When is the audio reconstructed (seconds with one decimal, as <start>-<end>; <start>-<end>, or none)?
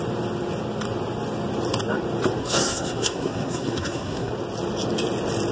2.4-4.3